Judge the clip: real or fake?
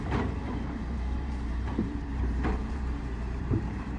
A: fake